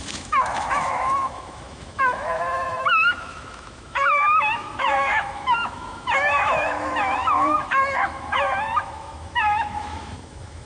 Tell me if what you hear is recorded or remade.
remade